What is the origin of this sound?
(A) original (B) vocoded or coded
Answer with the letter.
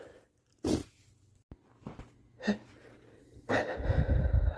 A